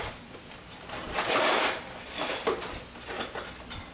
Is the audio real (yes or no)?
no